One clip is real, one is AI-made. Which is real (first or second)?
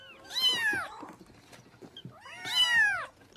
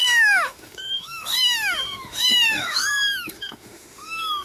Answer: first